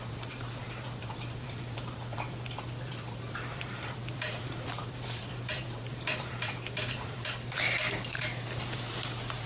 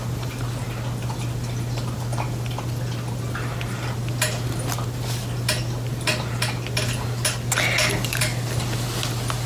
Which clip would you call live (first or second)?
second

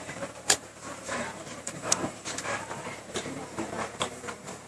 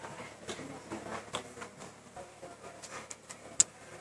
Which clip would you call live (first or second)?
second